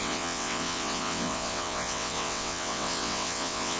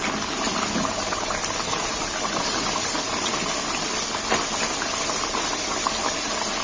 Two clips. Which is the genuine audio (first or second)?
second